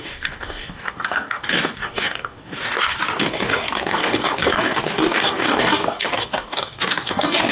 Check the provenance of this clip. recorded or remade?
remade